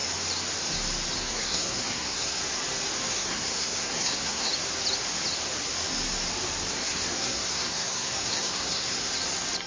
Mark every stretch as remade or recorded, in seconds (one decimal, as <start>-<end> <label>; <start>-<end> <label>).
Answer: 0.0-1.2 recorded; 1.2-2.4 remade; 2.4-3.1 recorded; 3.1-4.5 remade; 4.5-6.7 recorded; 6.7-9.1 remade; 9.1-9.7 recorded